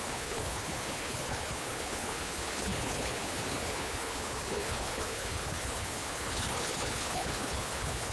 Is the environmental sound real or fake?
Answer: fake